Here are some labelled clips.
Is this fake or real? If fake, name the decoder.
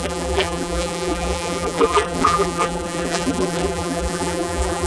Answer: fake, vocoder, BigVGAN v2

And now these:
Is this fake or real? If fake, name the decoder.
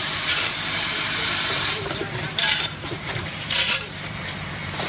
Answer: fake, vocoder, BigVGAN v2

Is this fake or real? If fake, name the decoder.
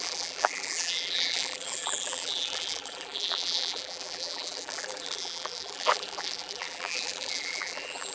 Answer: fake, vocoder, BigVGAN v2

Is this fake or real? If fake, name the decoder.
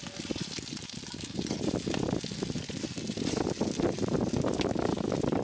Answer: real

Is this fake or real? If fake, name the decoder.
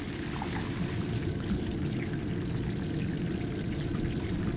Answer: fake, vocoder, BigVGAN v2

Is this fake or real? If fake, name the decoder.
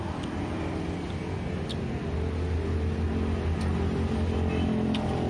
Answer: real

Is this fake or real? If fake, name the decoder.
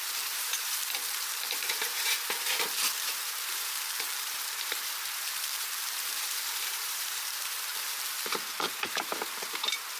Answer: fake, vocoder, BigVGAN v2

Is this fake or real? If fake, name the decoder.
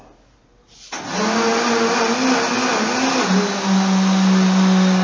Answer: real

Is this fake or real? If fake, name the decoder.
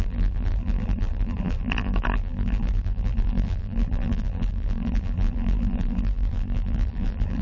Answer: fake, vocoder, BigVGAN v2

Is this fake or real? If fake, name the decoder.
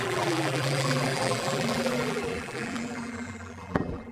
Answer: fake, vocoder, BigVGAN v2